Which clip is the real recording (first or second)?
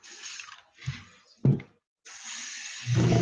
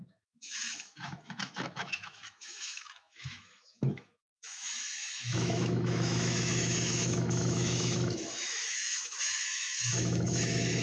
first